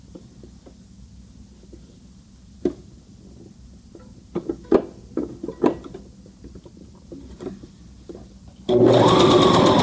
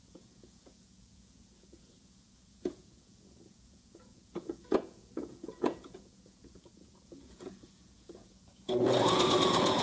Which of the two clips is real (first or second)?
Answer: first